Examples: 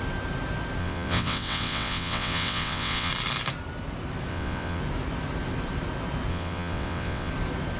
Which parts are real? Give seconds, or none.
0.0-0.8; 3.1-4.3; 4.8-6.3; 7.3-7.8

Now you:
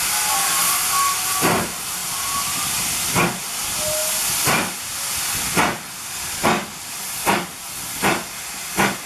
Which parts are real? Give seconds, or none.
0.0-9.1

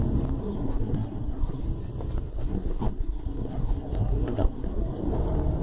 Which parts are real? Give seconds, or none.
0.0-0.4; 1.6-2.3; 5.1-5.6